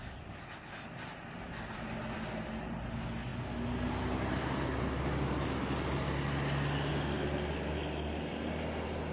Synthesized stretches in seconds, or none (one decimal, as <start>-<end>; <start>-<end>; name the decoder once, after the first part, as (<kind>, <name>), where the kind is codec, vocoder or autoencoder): none